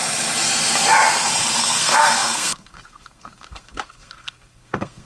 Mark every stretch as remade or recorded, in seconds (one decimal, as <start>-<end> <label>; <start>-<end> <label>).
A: 0.0-1.6 recorded; 1.6-5.0 remade